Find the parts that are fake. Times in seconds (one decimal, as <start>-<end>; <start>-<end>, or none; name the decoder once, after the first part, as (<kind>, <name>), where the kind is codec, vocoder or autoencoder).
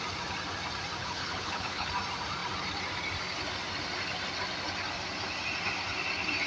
1.0-1.9 (codec, HILCodec)